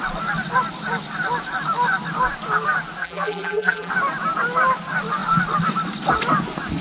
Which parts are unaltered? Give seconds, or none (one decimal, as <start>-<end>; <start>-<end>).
0.0-3.0; 3.9-6.8